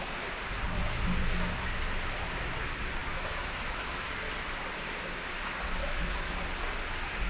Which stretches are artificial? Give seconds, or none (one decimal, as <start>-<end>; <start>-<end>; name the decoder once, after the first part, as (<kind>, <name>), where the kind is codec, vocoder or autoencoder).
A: 3.0-3.9 (autoencoder, DAC-VAE); 5.8-6.3